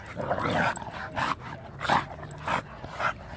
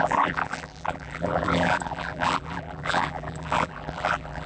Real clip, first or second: first